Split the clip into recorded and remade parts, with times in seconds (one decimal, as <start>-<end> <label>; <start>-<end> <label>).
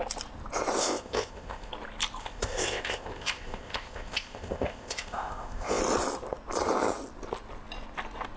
0.0-0.8 recorded; 0.8-1.7 remade; 1.7-2.2 recorded; 2.2-5.8 remade; 5.8-8.4 recorded